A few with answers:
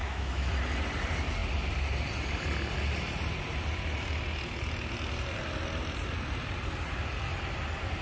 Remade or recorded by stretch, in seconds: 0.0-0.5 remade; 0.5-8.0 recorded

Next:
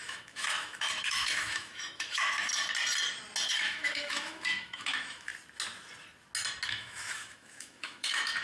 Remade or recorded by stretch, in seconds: 0.0-2.5 remade; 2.5-3.5 recorded; 3.5-5.3 remade; 5.3-6.7 recorded; 6.7-8.4 remade

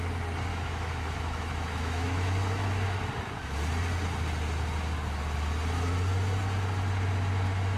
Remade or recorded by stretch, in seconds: 0.0-0.5 recorded; 0.5-3.1 remade; 3.1-7.8 recorded

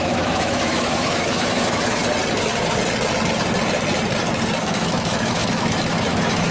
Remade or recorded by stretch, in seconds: 0.0-2.0 remade; 2.0-4.6 recorded; 4.6-6.5 remade

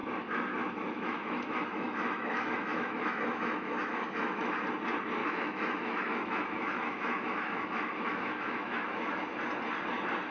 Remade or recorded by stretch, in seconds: 0.0-4.6 remade; 4.6-5.2 recorded; 5.2-9.2 remade; 9.2-10.3 recorded

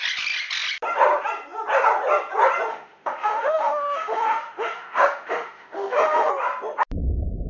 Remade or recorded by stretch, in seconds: 0.0-2.7 recorded; 2.7-6.3 remade; 6.3-7.5 recorded

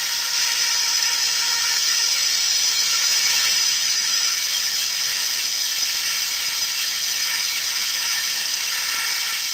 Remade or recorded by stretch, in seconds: 0.0-0.8 recorded; 0.8-5.7 remade; 5.7-6.8 recorded; 6.8-8.7 remade; 8.7-9.5 recorded

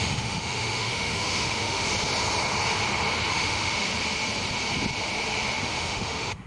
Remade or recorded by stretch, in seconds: 0.0-1.9 remade; 1.9-3.3 recorded; 3.3-3.9 remade; 3.9-5.6 recorded; 5.6-6.5 remade